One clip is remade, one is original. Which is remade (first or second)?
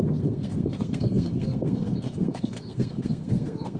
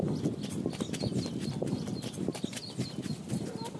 first